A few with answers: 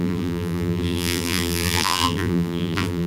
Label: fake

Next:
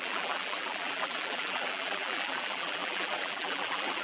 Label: fake